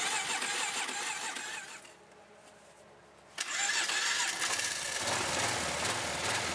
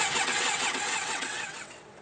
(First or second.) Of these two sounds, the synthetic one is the second